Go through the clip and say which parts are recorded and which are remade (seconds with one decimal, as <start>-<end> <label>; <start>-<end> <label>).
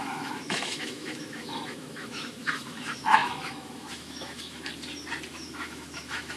0.0-4.7 remade; 4.7-5.3 recorded; 5.3-6.4 remade